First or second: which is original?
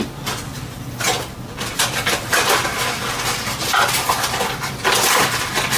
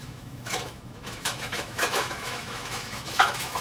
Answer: first